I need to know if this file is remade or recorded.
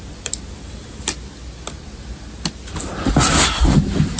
recorded